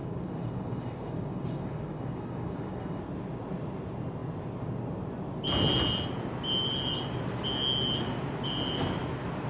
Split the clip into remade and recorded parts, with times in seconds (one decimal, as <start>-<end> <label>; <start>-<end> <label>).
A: 0.0-3.0 remade; 3.0-9.5 recorded